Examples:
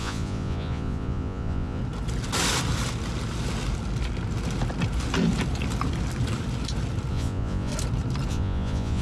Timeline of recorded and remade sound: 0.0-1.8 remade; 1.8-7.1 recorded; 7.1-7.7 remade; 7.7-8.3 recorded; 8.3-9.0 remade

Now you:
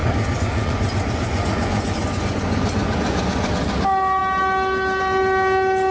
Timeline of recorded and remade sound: 0.0-3.5 remade; 3.5-5.9 recorded

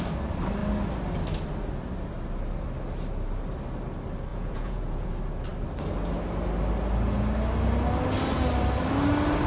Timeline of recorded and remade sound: 0.0-4.3 recorded; 4.3-5.1 remade; 5.1-9.5 recorded

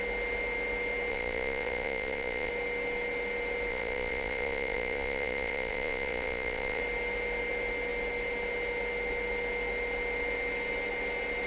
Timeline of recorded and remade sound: 0.0-1.1 recorded; 1.1-2.5 remade; 2.5-3.7 recorded; 3.7-6.8 remade; 6.8-11.5 recorded

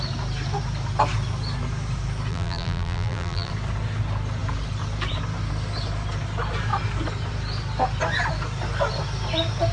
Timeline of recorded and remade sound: 0.0-2.3 recorded; 2.3-3.5 remade; 3.5-9.7 recorded